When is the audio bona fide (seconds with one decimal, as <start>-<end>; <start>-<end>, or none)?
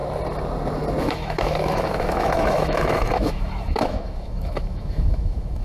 0.0-1.0